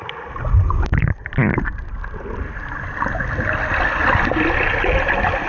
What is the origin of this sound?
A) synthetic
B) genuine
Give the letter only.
B